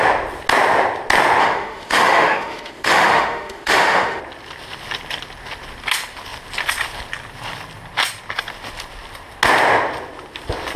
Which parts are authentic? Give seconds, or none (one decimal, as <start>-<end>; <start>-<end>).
0.0-1.4; 4.2-10.8

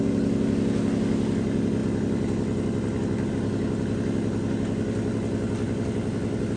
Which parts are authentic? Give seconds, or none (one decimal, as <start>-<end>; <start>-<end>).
0.0-6.6

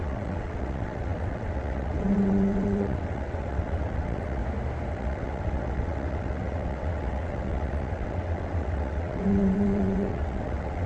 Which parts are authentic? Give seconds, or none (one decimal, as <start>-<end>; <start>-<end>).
4.4-4.9

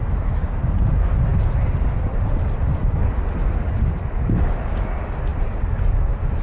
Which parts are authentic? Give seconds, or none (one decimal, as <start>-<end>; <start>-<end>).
0.0-6.4

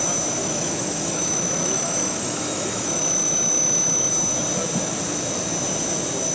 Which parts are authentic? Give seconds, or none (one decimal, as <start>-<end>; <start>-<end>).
0.0-0.4; 4.1-6.3